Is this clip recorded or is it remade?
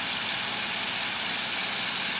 recorded